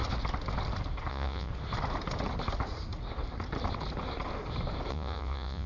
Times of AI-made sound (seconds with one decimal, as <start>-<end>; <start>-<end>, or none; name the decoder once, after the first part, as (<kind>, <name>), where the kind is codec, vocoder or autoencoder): 1.1-1.5 (vocoder, Vocos); 4.9-5.7